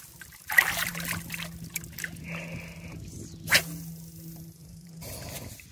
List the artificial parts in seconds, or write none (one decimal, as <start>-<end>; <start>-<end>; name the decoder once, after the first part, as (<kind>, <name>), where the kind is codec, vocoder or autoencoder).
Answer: 4.6-5.1 (vocoder, BigVGAN v2)